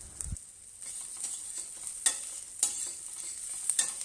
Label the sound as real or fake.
real